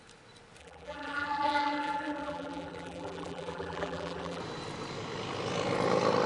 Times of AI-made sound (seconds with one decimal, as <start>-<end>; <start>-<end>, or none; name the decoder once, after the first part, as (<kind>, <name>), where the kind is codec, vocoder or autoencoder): 0.6-4.4 (vocoder, BigVGAN v2)